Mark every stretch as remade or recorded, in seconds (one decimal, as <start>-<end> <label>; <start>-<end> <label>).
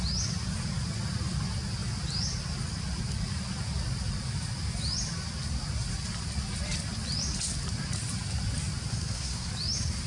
0.0-8.9 recorded; 8.9-9.5 remade; 9.5-10.1 recorded